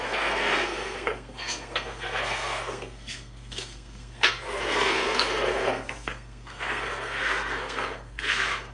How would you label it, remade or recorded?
remade